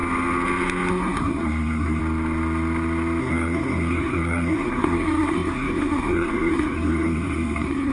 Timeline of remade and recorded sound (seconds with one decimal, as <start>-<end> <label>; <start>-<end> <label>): 0.0-0.9 recorded; 0.9-2.0 remade; 2.0-3.2 recorded; 3.2-7.9 remade